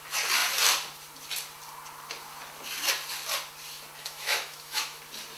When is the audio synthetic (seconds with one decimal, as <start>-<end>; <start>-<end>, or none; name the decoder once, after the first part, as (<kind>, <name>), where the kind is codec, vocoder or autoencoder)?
4.0-5.0 (autoencoder, DAC-VAE)